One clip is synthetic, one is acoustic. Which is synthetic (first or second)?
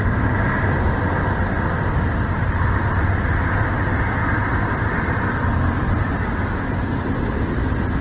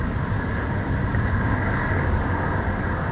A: second